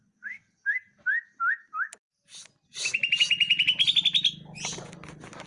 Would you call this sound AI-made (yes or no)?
no